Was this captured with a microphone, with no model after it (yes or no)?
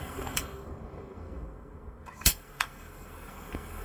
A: no